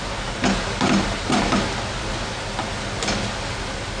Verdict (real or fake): real